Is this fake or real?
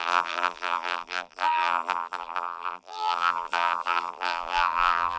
fake